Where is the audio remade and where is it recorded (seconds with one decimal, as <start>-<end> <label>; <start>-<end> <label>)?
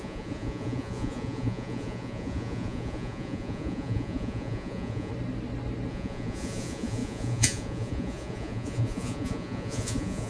0.0-5.1 remade; 5.1-5.9 recorded; 5.9-10.3 remade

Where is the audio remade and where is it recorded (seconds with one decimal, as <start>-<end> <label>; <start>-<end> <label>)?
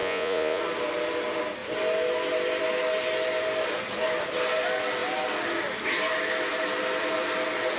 0.0-0.6 remade; 0.6-7.8 recorded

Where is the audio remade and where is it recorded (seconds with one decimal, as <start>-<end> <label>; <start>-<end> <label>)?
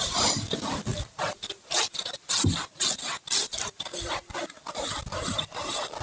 0.0-6.0 recorded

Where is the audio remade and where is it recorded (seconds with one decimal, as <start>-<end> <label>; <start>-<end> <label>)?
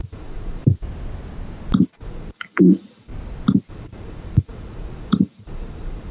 0.0-0.6 remade; 0.6-1.8 recorded; 1.8-3.1 remade; 3.1-3.7 recorded; 3.7-6.1 remade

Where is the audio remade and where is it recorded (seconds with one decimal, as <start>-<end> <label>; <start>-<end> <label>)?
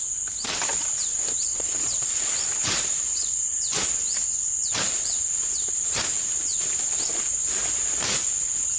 0.0-1.5 recorded; 1.5-2.2 remade; 2.2-2.9 recorded; 2.9-3.6 remade; 3.6-8.8 recorded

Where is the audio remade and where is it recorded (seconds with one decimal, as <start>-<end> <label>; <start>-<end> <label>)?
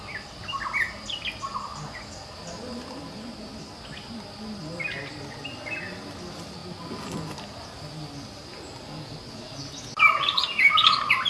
0.0-11.3 recorded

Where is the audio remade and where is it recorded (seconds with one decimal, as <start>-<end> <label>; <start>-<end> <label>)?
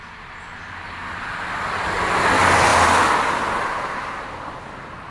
0.0-5.1 recorded